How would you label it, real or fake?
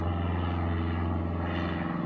real